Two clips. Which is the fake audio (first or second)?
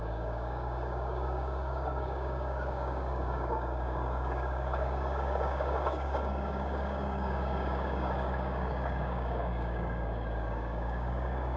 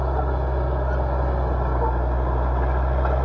first